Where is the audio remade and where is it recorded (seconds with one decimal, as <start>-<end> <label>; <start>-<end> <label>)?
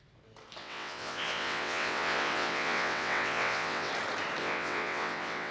0.0-0.6 recorded; 0.6-3.9 remade; 3.9-4.4 recorded; 4.4-5.5 remade